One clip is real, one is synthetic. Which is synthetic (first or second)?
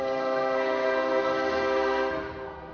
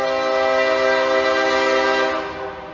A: first